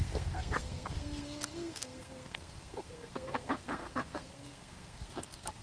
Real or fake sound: fake